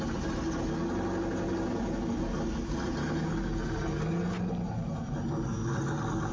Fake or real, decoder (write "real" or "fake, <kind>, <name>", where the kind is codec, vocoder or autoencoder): real